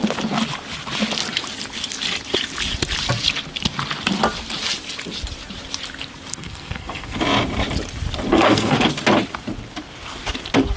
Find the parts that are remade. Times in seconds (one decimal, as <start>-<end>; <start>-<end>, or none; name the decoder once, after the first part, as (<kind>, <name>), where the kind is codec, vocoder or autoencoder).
6.3-7.2 (codec, SNAC); 8.3-8.9